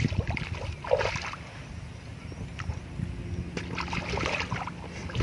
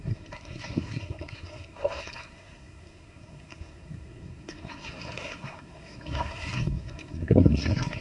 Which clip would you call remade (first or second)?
second